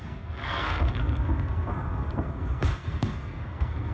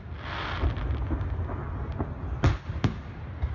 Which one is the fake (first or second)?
first